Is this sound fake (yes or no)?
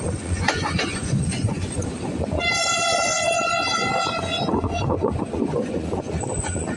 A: yes